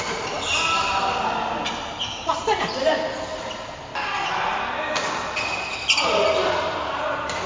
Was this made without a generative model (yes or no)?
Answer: yes